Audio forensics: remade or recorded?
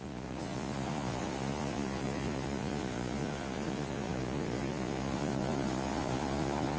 remade